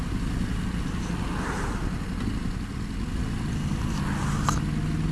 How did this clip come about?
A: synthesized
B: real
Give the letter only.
B